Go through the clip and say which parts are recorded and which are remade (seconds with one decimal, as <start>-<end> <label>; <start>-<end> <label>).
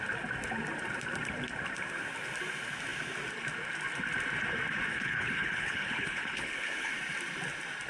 0.0-4.9 recorded; 4.9-6.9 remade; 6.9-7.9 recorded